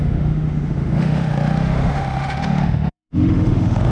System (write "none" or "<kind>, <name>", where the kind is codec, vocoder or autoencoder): autoencoder, DAC-VAE